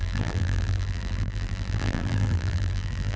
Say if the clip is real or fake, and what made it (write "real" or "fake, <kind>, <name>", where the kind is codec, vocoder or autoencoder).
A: fake, vocoder, BigVGAN v2